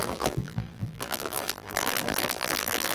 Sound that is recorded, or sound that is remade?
remade